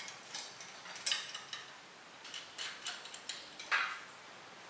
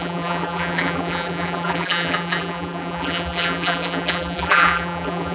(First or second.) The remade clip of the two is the second